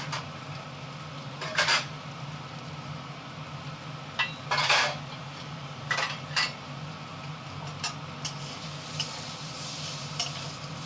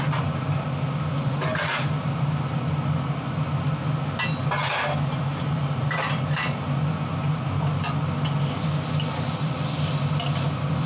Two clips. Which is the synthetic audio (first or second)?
first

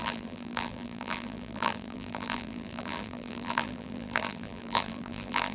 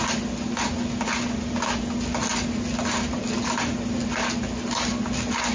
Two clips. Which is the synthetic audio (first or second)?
first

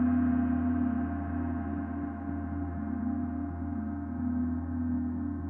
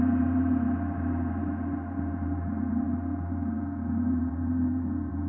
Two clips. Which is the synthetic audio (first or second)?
second